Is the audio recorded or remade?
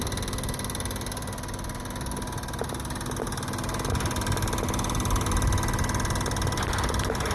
recorded